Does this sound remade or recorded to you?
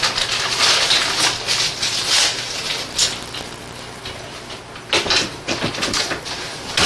recorded